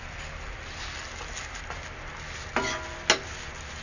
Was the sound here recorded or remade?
recorded